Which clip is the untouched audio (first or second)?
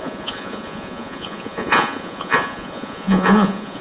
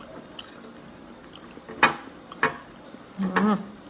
second